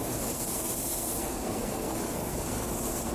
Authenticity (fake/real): fake